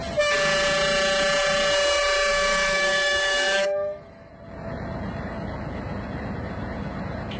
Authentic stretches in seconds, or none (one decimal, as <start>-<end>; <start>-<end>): 0.0-2.3; 4.3-7.4